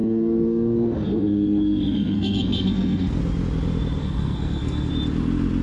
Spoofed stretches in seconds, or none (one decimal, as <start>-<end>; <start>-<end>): 0.0-3.2; 4.0-4.9

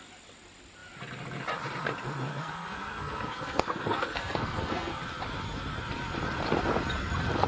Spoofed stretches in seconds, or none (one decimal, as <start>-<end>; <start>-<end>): 2.3-5.0